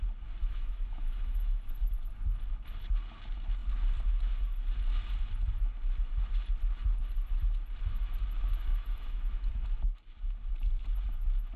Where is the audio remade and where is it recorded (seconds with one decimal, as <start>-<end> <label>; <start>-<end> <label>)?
0.0-0.4 recorded; 0.4-1.6 remade; 1.6-8.7 recorded; 8.7-9.2 remade; 9.2-11.6 recorded

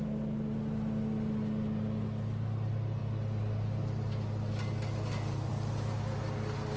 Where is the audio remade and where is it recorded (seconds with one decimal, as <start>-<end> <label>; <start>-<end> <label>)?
0.0-6.8 recorded

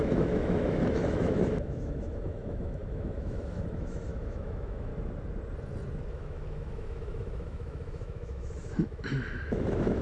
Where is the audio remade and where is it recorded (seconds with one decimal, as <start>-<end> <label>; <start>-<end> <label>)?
0.0-4.9 remade; 4.9-6.1 recorded; 6.1-10.0 remade

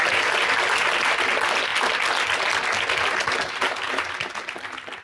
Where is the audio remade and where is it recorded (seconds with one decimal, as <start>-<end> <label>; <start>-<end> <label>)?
0.0-5.0 recorded